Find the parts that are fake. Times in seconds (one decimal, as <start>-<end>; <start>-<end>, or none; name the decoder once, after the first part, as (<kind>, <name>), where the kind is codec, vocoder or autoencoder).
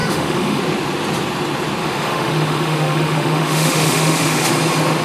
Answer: 0.0-0.6 (autoencoder, DAC-VAE); 1.8-4.5